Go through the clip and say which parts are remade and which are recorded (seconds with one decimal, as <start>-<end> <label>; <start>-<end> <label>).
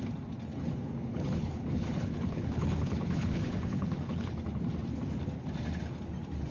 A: 0.0-0.5 recorded; 0.5-4.4 remade; 4.4-6.5 recorded